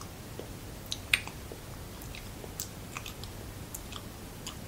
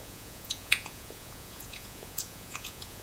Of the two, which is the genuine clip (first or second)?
first